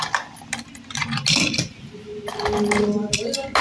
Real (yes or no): yes